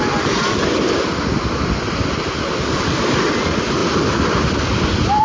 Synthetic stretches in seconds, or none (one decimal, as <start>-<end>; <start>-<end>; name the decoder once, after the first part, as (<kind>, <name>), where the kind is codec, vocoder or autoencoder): none